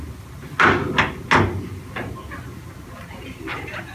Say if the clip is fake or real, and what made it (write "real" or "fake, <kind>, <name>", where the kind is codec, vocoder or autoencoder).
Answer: real